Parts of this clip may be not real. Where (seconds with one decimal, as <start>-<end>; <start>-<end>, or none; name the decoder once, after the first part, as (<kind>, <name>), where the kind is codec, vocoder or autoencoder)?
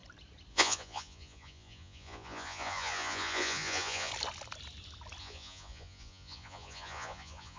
0.5-4.1 (vocoder, Vocos); 5.2-7.6